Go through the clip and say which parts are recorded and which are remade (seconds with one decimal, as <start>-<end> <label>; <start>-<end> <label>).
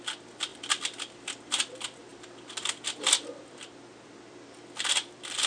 0.0-5.5 recorded